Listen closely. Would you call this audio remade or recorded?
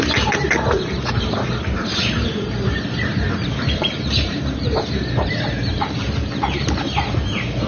remade